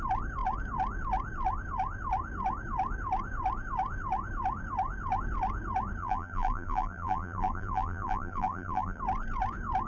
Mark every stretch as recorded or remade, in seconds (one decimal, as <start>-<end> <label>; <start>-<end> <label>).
0.0-6.0 recorded; 6.0-9.0 remade; 9.0-9.9 recorded